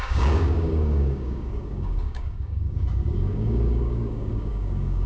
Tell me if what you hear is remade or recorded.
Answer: remade